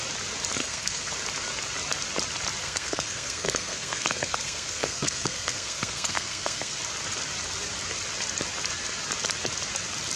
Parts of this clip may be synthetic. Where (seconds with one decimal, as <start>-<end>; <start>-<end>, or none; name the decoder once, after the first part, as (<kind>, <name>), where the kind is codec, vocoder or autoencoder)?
0.6-1.1 (codec, SNAC); 2.6-6.8